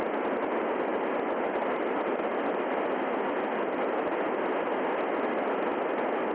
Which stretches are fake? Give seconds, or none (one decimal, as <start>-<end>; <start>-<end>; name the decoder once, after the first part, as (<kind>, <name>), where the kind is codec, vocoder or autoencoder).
none